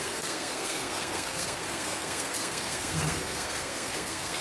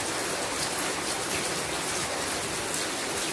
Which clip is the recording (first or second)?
second